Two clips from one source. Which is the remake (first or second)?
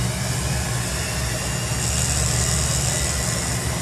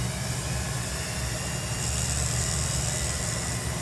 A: second